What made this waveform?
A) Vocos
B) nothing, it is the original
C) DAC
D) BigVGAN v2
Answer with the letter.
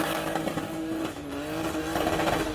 B